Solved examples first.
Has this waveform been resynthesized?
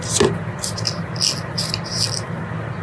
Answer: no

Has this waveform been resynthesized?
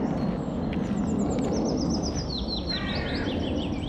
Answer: no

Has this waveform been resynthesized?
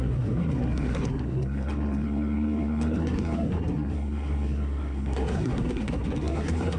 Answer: yes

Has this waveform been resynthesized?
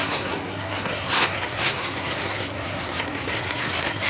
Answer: yes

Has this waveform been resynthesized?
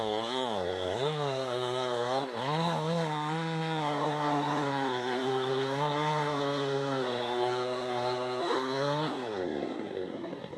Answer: yes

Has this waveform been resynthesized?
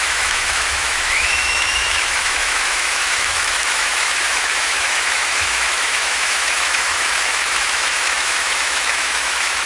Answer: yes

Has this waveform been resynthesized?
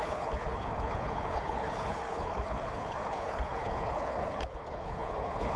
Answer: yes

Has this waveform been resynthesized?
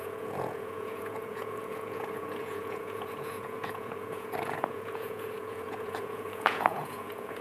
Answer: yes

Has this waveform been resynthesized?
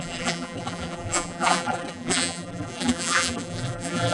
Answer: yes